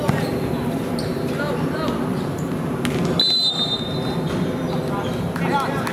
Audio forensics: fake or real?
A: real